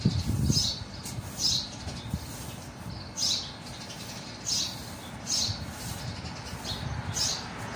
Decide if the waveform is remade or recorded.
recorded